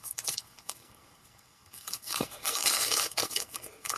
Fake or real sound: fake